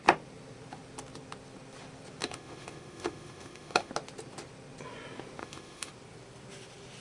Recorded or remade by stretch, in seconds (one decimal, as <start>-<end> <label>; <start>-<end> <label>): 0.0-2.2 recorded; 2.2-3.9 remade; 3.9-5.4 recorded; 5.4-5.9 remade; 5.9-7.0 recorded